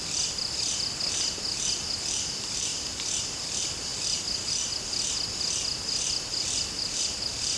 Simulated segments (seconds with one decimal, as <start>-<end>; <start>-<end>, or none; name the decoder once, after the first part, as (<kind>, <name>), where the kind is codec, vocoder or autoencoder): none